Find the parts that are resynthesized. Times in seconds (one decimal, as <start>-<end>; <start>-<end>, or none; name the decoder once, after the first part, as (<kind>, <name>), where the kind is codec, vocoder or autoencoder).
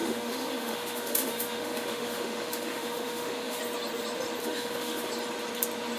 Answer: 0.0-3.6 (autoencoder, DAC-VAE); 4.4-5.1